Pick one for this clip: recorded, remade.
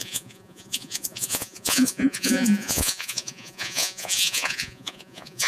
remade